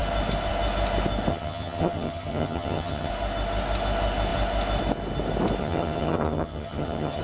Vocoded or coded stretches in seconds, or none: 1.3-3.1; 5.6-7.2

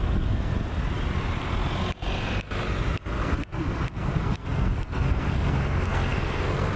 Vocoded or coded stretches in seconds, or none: 0.0-0.5; 3.2-6.8

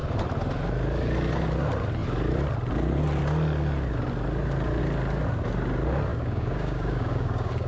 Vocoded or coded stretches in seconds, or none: 6.1-7.7

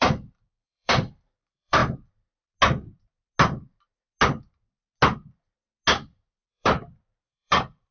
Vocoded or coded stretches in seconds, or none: 0.0-1.8; 6.5-7.9

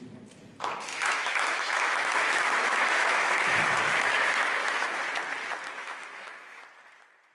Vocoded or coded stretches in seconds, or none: 0.9-5.0; 5.8-6.6

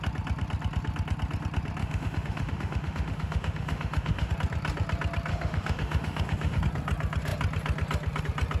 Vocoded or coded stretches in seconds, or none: 1.8-4.3; 5.3-6.6

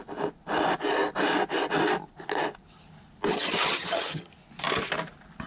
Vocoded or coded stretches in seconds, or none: 3.3-4.3

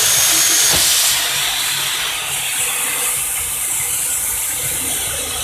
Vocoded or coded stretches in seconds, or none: none